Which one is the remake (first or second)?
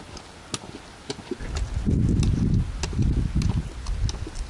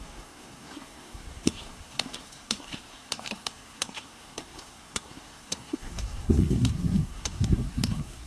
second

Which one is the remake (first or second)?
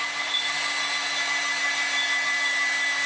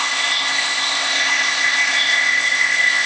second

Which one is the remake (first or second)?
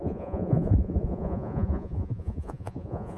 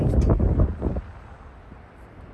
first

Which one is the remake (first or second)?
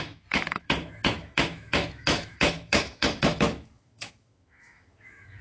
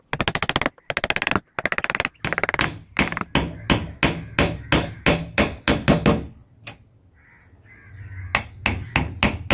first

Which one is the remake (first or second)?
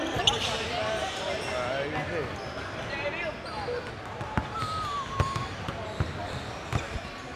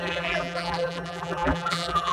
second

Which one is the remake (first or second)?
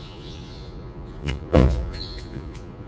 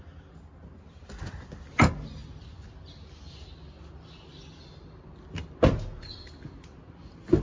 first